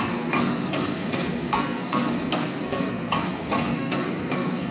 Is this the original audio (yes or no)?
no